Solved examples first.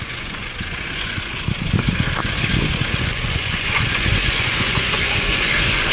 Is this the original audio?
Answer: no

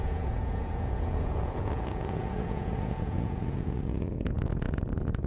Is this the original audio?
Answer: no